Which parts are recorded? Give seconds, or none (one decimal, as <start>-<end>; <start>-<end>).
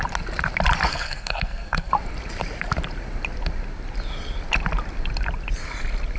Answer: 0.0-0.9; 1.9-6.2